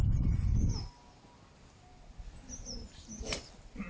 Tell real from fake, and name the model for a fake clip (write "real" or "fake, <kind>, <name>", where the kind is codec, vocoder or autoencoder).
real